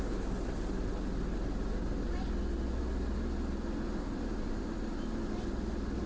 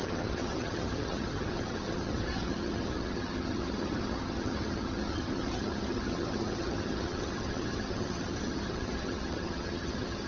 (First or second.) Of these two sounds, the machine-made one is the second